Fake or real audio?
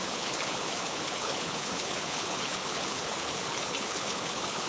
fake